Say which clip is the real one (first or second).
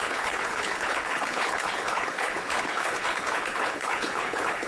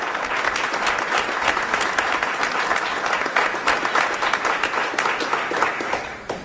second